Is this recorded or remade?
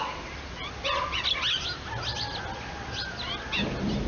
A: recorded